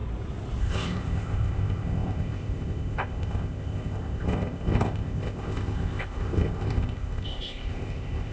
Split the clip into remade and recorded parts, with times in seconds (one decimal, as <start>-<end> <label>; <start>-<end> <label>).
0.0-0.6 recorded; 0.6-8.3 remade